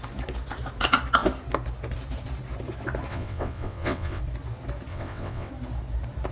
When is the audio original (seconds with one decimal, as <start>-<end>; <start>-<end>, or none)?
0.0-3.1; 4.2-4.9; 5.5-6.3